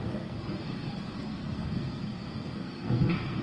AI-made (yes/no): yes